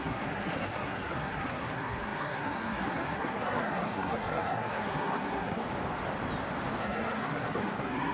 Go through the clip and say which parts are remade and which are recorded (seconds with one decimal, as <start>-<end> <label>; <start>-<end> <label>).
0.0-5.6 remade; 5.6-6.8 recorded; 6.8-8.1 remade